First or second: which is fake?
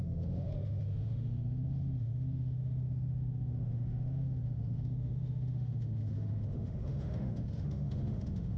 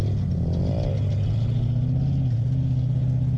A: first